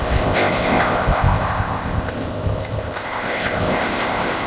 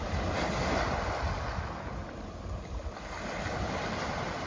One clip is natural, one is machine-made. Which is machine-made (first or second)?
first